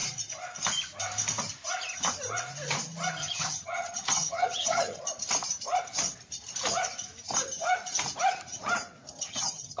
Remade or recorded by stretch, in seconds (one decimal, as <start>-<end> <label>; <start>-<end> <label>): 0.0-3.2 recorded; 3.2-5.0 remade; 5.0-9.2 recorded; 9.2-9.8 remade